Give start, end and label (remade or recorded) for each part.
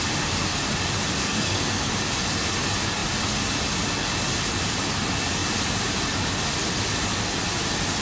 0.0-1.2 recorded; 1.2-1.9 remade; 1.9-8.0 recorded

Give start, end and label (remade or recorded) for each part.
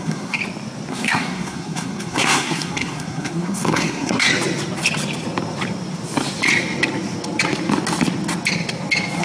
0.0-0.4 remade; 0.4-0.9 recorded; 0.9-4.3 remade; 4.3-9.2 recorded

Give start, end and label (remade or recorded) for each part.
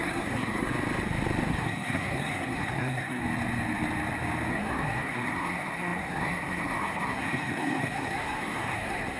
0.0-0.7 remade; 0.7-1.5 recorded; 1.5-3.2 remade; 3.2-4.5 recorded; 4.5-9.2 remade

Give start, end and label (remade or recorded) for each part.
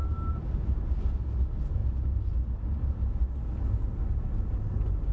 0.0-5.1 recorded